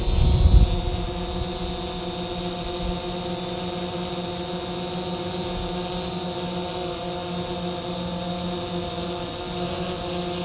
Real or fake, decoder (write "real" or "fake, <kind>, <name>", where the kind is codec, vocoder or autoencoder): real